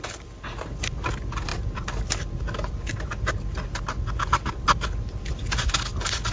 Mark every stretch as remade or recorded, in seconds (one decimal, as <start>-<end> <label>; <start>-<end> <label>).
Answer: 0.0-6.3 recorded